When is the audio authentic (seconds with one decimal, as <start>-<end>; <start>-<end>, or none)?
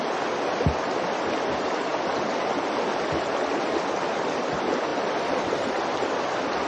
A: 0.0-4.9; 5.8-6.7